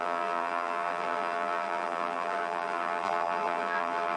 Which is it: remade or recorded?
remade